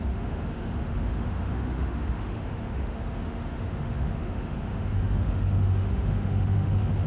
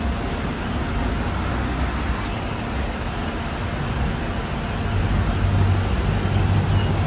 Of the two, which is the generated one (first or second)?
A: first